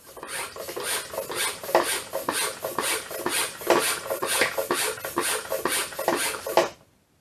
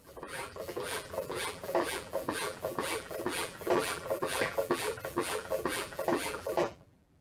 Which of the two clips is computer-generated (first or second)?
second